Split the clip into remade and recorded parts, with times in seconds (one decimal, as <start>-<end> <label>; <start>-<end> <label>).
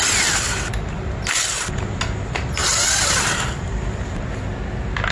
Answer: 0.0-2.6 recorded; 2.6-4.2 remade; 4.2-5.1 recorded